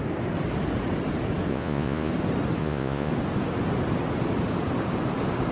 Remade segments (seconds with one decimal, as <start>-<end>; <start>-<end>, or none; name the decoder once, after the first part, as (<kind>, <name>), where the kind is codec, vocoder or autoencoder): 1.5-2.1 (vocoder, Vocos); 2.6-3.1